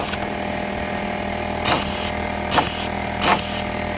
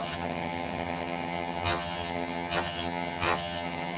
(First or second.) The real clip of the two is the first